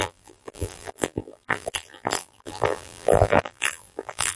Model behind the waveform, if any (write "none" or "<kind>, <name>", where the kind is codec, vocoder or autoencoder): vocoder, BigVGAN v2